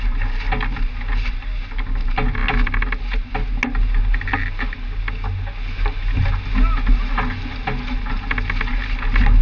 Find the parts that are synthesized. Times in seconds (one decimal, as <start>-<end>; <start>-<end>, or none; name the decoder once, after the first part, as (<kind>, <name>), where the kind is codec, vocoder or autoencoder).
none